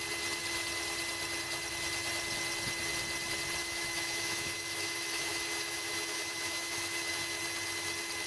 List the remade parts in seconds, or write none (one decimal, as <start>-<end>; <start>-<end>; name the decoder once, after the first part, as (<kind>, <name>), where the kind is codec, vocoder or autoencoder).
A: 3.6-7.1 (autoencoder, DAC-VAE)